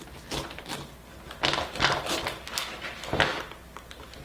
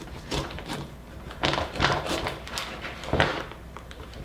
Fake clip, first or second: second